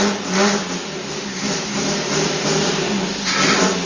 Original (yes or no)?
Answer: yes